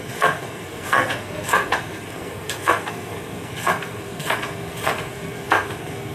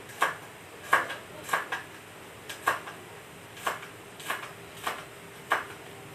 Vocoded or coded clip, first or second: first